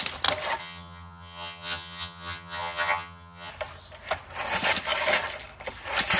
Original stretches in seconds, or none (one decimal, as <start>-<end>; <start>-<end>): 0.0-0.6; 3.5-6.2